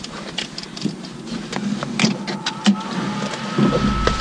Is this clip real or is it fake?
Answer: real